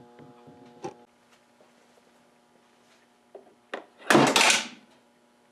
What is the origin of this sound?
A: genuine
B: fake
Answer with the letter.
A